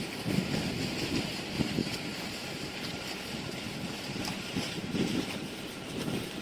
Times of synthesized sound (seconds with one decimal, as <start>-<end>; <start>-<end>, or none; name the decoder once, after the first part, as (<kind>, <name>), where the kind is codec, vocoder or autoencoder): 0.0-0.7 (vocoder, BigVGAN v2); 1.8-5.6